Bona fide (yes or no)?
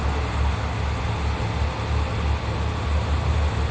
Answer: yes